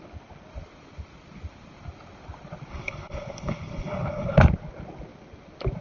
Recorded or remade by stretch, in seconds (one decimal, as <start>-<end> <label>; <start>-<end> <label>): 0.0-2.7 recorded; 2.7-4.4 remade; 4.4-5.8 recorded